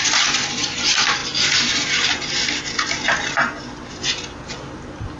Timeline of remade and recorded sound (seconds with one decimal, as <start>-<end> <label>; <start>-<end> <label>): 0.0-5.2 recorded